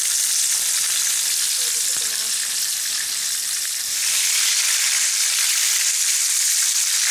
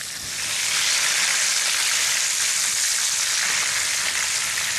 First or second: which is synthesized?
first